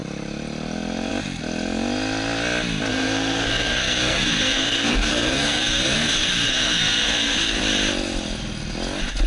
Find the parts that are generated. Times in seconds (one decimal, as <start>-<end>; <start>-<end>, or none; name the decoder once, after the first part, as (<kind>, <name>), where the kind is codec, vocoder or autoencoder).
2.9-7.6 (codec, SNAC)